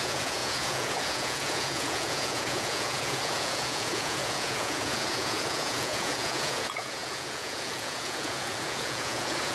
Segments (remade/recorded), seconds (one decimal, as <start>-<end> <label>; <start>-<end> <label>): 0.0-9.5 remade